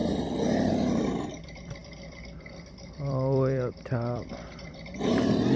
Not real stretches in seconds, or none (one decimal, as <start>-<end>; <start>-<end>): 0.0-5.6